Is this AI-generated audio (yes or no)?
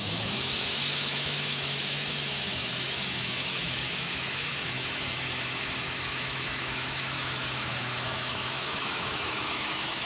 yes